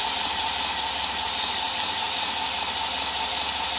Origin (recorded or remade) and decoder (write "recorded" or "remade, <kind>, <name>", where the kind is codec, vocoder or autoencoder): recorded